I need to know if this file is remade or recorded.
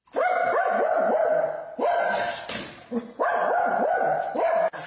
recorded